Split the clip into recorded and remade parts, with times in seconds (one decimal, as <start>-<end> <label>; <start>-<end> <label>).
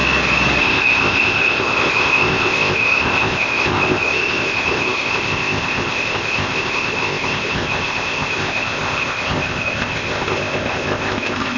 0.0-0.6 recorded; 0.6-11.6 remade